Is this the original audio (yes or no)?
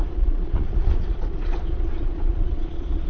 no